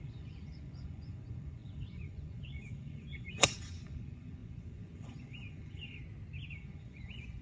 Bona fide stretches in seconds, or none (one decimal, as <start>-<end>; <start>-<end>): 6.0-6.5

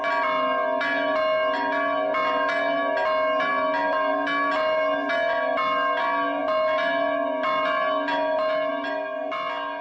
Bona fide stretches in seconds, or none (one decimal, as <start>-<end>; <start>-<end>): 0.0-9.8

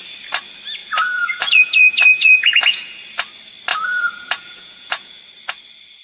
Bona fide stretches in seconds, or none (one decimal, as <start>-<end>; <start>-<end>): 0.0-0.8; 3.0-3.7; 5.2-6.0